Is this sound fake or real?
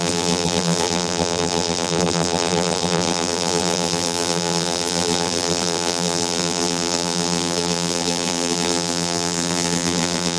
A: fake